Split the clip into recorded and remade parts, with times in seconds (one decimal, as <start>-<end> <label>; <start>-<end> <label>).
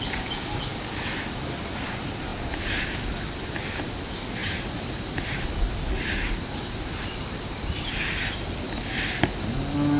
0.0-4.4 recorded; 4.4-5.7 remade; 5.7-10.0 recorded